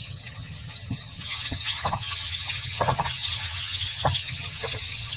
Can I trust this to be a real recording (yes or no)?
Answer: no